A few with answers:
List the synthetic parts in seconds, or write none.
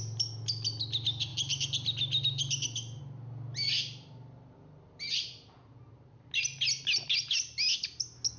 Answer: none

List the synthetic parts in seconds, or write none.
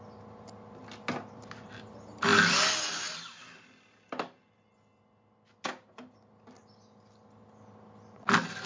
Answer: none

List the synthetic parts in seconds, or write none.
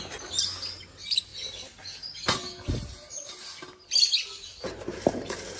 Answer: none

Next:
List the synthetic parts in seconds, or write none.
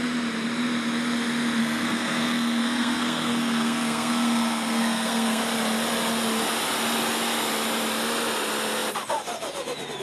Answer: 1.6-5.4 (codec, SNAC)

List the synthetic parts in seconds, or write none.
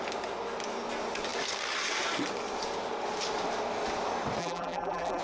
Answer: 4.4-5.2 (vocoder, BigVGAN v2)